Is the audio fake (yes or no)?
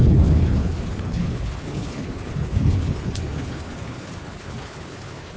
yes